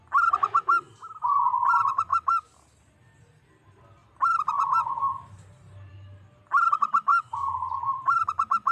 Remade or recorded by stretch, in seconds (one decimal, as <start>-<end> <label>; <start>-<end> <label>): 0.0-8.7 recorded